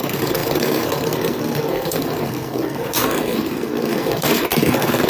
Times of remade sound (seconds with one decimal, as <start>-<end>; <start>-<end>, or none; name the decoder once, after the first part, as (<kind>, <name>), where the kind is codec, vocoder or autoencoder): 0.0-5.1 (codec, SNAC)